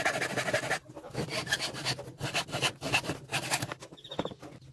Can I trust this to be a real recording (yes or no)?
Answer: yes